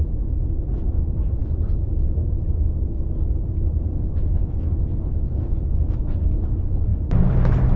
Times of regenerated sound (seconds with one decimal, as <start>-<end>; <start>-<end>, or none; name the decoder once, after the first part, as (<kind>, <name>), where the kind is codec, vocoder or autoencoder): 1.4-2.5 (vocoder, BigVGAN v2)